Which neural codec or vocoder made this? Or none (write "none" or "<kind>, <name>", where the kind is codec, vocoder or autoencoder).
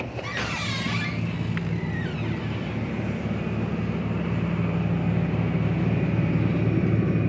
none